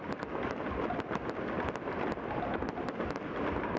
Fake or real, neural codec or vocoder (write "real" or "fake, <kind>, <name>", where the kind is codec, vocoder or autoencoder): real